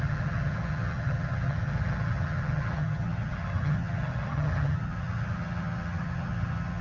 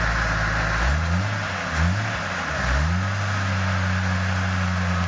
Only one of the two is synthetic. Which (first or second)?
first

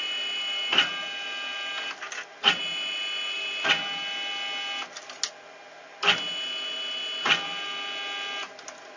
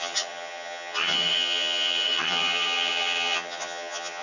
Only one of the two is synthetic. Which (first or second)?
second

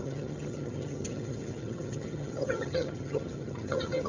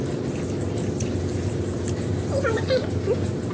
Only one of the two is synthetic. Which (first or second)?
first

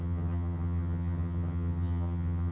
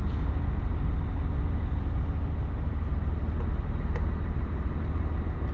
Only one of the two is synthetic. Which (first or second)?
first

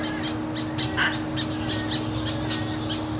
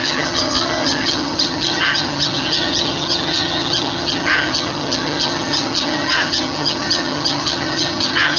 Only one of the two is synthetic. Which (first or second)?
second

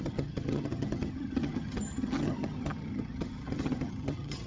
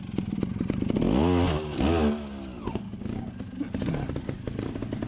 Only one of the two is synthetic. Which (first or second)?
first